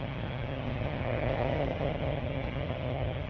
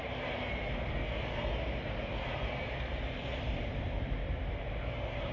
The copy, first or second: first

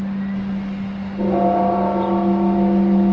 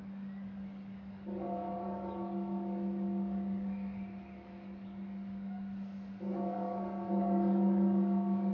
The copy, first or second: second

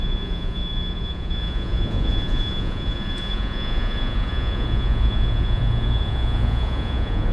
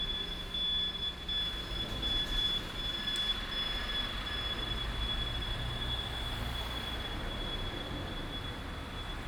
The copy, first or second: first